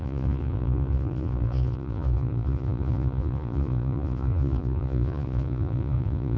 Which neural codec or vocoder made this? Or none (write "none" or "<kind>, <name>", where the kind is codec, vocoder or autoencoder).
vocoder, Vocos